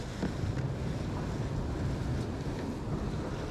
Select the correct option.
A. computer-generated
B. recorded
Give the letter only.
B